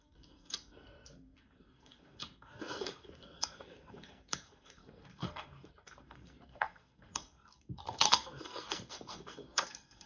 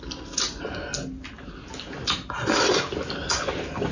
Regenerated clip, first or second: first